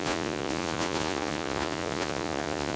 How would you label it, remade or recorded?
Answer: remade